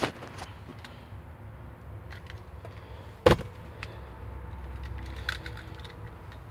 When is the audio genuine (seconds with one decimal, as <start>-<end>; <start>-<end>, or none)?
0.0-6.5